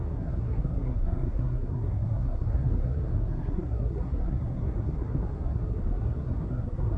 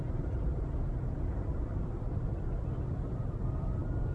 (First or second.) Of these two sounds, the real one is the second